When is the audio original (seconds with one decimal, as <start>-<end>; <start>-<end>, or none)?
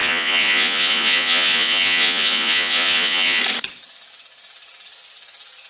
3.4-5.7